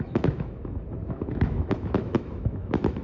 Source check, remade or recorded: remade